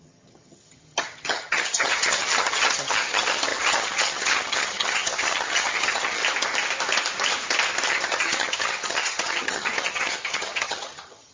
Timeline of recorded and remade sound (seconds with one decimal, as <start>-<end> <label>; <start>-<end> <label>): 0.0-6.2 remade; 6.2-7.9 recorded; 7.9-11.3 remade